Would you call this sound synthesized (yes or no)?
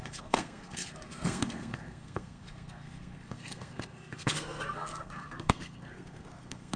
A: yes